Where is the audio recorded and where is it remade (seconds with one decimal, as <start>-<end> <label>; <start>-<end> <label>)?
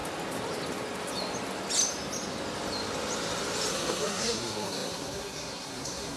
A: 0.0-3.7 recorded; 3.7-6.2 remade